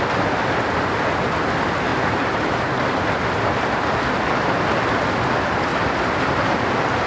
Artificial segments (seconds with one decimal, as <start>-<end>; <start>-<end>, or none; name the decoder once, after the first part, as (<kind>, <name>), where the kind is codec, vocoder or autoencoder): 1.9-3.0 (vocoder, BigVGAN v2); 5.7-6.6